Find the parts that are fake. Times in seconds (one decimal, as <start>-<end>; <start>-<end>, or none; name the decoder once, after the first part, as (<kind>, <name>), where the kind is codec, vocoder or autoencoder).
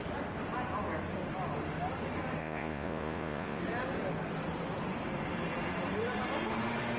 2.4-3.6 (vocoder, Vocos)